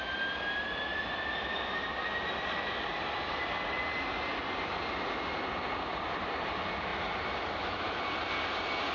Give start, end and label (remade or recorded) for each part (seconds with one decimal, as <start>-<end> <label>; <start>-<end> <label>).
0.0-8.9 recorded